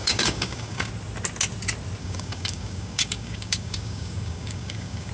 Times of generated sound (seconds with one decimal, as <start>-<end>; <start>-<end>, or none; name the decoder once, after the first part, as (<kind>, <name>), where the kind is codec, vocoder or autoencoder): 0.0-0.9 (codec, DAC); 2.0-5.1